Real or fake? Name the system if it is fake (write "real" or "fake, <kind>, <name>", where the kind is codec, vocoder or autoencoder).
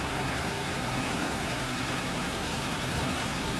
fake, codec, SNAC